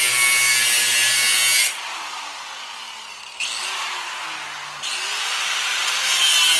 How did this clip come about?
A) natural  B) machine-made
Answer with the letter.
A